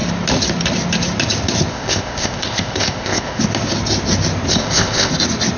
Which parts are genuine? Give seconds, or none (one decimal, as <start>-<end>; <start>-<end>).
0.0-1.7; 3.4-4.5; 5.1-5.6

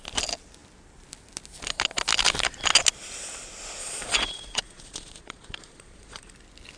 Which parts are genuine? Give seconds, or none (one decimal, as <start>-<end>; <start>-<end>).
0.0-3.8; 6.3-6.8